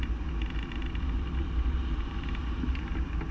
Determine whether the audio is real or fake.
real